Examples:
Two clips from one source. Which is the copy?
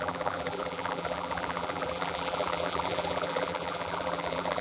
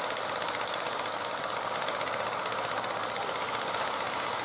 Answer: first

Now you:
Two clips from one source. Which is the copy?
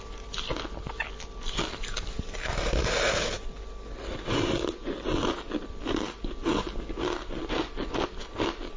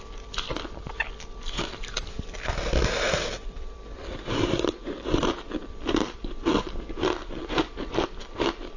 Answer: second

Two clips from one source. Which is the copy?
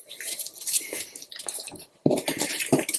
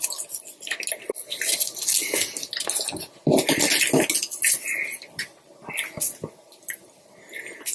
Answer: first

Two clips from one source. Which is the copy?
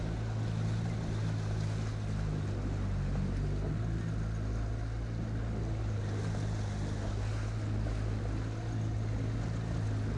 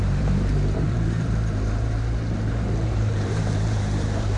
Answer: second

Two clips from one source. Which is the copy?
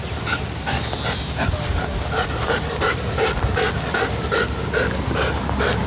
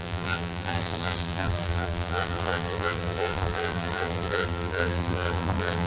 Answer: second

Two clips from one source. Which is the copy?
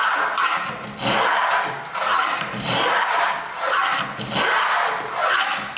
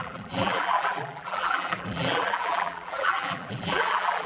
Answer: second